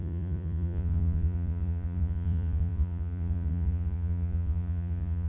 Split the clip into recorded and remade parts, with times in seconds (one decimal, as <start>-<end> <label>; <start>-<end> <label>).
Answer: 0.0-5.3 remade